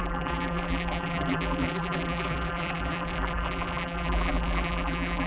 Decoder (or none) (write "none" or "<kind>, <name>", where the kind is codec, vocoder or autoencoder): vocoder, BigVGAN v2